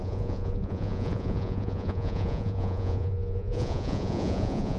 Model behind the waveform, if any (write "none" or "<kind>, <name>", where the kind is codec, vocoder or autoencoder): vocoder, Vocos